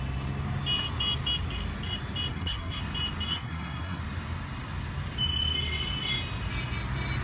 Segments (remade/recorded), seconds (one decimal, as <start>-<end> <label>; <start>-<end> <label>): 0.0-2.3 recorded; 2.3-2.8 remade; 2.8-3.3 recorded; 3.3-4.0 remade; 4.0-7.2 recorded

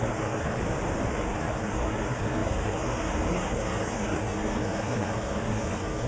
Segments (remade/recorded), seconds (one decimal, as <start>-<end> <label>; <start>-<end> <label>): 0.0-0.6 remade; 0.6-1.1 recorded; 1.1-6.1 remade

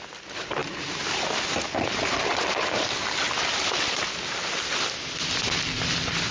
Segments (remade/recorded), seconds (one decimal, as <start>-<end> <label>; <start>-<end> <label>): 0.0-6.3 recorded

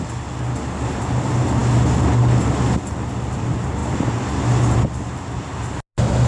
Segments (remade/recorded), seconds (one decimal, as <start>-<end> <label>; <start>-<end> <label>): 0.0-6.3 recorded